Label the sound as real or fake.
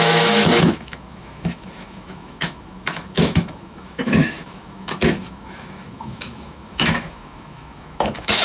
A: fake